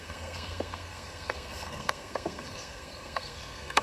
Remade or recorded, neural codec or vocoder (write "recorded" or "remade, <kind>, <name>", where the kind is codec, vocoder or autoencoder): remade, codec, SNAC